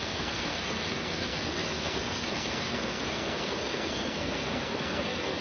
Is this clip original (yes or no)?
no